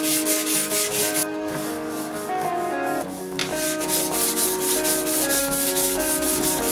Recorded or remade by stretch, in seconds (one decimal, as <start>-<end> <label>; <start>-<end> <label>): 0.0-3.4 remade; 3.4-5.4 recorded; 5.4-6.7 remade